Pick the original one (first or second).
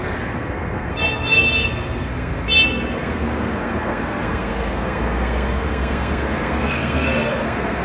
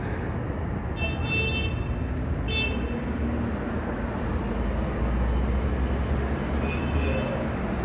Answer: second